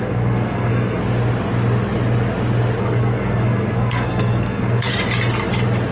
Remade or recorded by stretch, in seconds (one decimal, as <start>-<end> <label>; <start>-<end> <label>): 0.0-1.0 remade; 1.0-2.8 recorded; 2.8-4.9 remade; 4.9-5.9 recorded